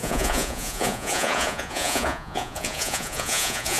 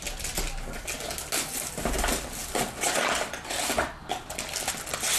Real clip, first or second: second